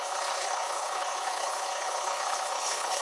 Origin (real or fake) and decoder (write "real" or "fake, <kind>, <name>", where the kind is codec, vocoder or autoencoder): fake, codec, HILCodec